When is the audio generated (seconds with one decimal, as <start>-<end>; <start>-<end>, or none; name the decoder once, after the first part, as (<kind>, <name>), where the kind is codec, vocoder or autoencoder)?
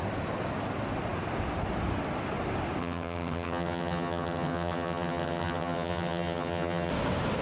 2.8-6.9 (vocoder, HiFi-GAN)